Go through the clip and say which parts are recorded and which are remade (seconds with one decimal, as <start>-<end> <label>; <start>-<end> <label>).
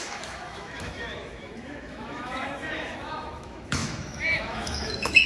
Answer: 0.0-5.3 remade